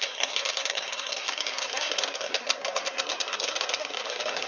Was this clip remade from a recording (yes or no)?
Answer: yes